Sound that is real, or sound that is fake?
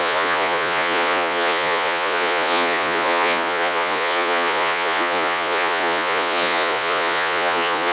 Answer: fake